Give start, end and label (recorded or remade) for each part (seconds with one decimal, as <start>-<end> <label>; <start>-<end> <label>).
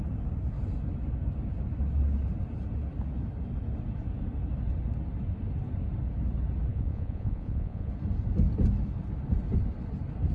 0.0-6.7 recorded; 6.7-7.9 remade; 7.9-10.3 recorded